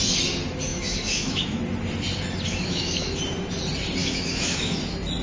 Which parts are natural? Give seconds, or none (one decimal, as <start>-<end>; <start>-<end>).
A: 0.0-0.7; 1.6-2.5; 3.1-4.0; 4.8-5.2